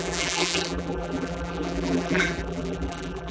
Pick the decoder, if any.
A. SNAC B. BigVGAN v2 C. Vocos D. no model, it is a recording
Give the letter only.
B